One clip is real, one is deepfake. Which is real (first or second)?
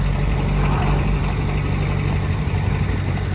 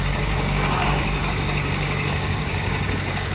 first